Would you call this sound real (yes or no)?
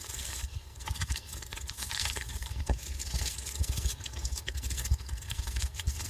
no